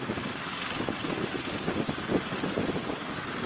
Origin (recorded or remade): recorded